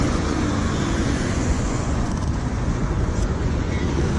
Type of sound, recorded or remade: remade